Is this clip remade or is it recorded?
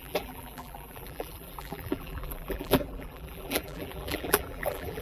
remade